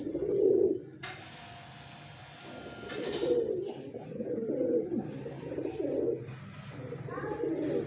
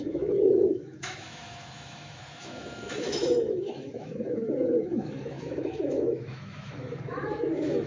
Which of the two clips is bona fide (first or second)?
first